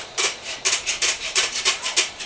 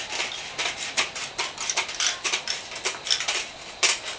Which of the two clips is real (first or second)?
second